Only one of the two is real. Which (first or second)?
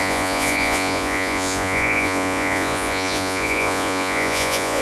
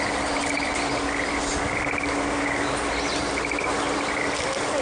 second